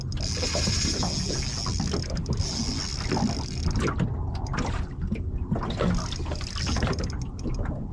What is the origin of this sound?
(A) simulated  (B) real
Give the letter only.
B